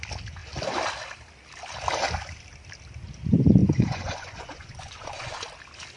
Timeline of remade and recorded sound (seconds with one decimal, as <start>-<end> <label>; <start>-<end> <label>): 0.0-3.6 recorded; 3.6-5.4 remade; 5.4-6.0 recorded